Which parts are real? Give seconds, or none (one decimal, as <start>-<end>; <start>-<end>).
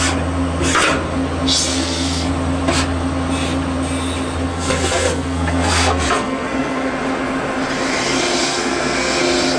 0.0-1.7; 2.3-4.5; 6.9-8.4; 9.2-9.6